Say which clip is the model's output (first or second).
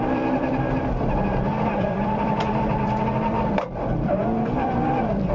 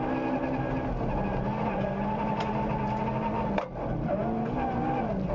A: first